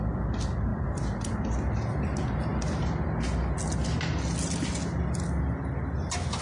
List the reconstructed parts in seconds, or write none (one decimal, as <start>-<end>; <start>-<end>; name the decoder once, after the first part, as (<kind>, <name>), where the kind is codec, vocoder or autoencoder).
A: none